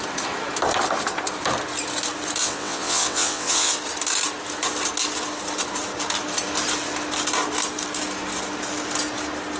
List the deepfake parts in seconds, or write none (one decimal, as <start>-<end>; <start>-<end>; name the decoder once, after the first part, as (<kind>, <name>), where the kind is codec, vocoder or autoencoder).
2.4-3.8 (vocoder, WaveNeXt)